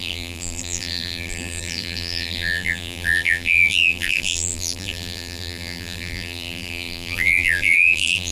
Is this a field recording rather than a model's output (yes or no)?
no